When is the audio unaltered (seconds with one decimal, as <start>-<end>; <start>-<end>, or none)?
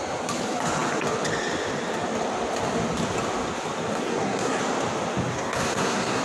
0.0-3.9; 4.6-5.3